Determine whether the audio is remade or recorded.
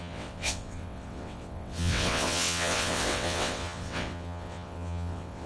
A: remade